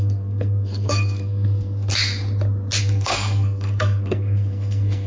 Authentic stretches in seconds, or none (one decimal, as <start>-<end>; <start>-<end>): 1.9-2.8